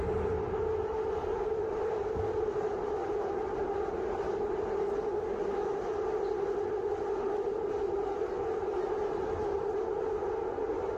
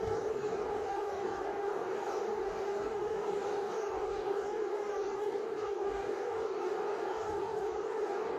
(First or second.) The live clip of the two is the first